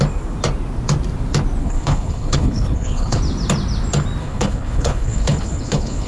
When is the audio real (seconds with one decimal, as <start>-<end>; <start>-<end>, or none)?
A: 0.0-1.6; 3.2-4.2